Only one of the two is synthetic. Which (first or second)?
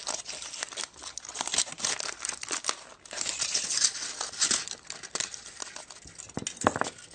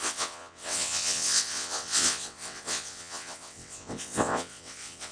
second